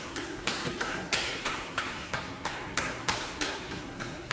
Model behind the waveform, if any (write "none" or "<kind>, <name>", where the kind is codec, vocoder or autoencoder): codec, SNAC